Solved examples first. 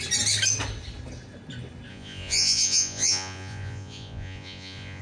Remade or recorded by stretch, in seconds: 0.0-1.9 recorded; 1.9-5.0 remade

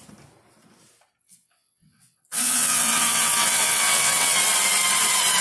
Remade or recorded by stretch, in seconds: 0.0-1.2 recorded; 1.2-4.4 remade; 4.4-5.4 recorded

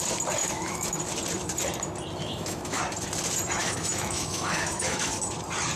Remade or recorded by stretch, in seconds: 0.0-0.4 recorded; 0.4-1.0 remade; 1.0-2.2 recorded; 2.2-2.8 remade; 2.8-3.6 recorded; 3.6-5.2 remade; 5.2-5.8 recorded

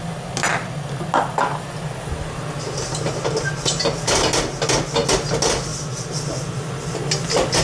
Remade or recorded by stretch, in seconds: 0.0-7.6 recorded

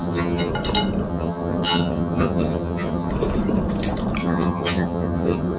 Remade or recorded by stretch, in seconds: 0.0-0.5 remade; 0.5-1.1 recorded; 1.1-3.1 remade; 3.1-4.2 recorded; 4.2-5.6 remade

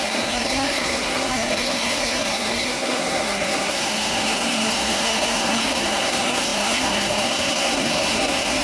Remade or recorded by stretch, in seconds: 0.0-8.6 remade